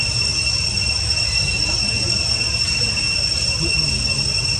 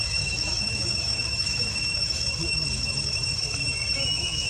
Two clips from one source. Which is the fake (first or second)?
second